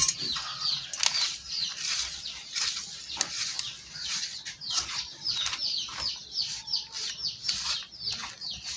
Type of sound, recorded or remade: recorded